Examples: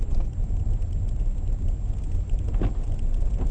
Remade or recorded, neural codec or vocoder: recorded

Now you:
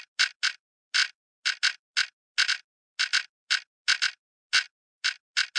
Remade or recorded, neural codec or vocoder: recorded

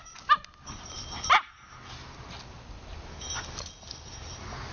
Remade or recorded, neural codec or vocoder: recorded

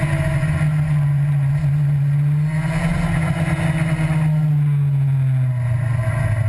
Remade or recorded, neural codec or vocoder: recorded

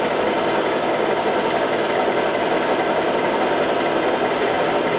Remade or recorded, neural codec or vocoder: recorded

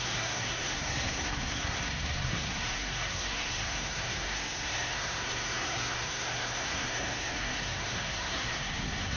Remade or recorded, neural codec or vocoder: remade, codec, SNAC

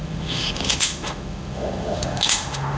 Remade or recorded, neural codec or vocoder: remade, autoencoder, DAC-VAE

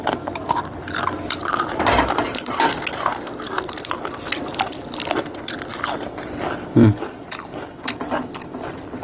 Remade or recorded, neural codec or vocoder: recorded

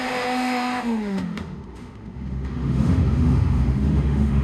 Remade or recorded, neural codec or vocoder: remade, autoencoder, DAC-VAE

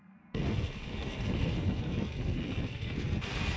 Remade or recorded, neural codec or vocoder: remade, codec, SNAC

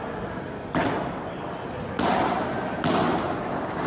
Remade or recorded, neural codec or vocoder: recorded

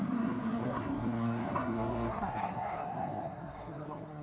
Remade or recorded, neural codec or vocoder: remade, codec, SNAC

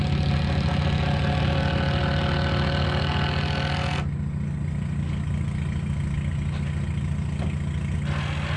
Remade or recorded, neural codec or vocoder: recorded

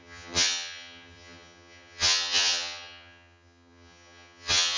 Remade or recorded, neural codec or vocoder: remade, vocoder, HiFi-GAN